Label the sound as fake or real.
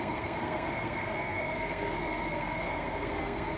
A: fake